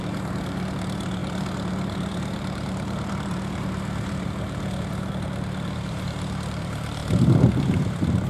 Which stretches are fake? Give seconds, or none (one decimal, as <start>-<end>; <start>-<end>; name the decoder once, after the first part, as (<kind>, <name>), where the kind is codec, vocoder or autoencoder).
0.0-7.0 (vocoder, BigVGAN v2); 7.5-8.3